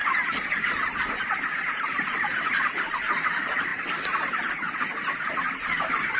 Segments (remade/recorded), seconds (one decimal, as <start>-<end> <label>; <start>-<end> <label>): 0.0-1.1 recorded; 1.1-3.7 remade; 3.7-5.3 recorded; 5.3-6.2 remade